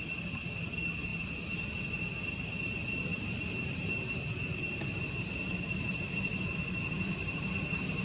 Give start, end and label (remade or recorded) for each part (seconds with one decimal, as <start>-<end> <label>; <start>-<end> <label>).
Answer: 0.0-3.1 recorded; 3.1-8.0 remade